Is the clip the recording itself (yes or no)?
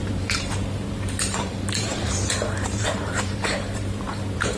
no